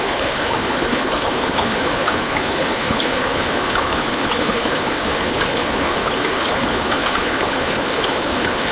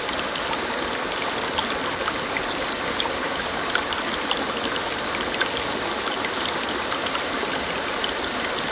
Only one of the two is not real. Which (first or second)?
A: first